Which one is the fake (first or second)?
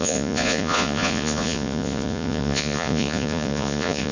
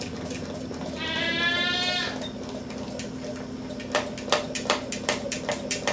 first